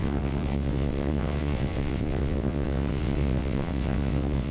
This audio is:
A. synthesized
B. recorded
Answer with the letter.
A